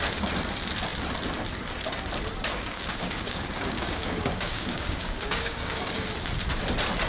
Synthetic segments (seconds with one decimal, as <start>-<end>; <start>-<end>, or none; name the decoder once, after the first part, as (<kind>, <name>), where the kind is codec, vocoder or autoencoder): 2.5-6.1 (codec, DAC)